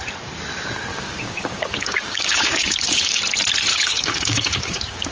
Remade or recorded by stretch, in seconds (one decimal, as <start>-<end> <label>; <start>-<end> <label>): 0.0-0.9 recorded; 0.9-3.2 remade; 3.2-3.7 recorded; 3.7-5.1 remade